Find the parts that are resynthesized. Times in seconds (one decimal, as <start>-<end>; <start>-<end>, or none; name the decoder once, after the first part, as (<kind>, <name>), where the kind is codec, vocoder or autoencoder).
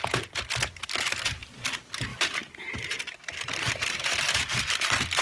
2.1-3.0 (vocoder, BigVGAN v2)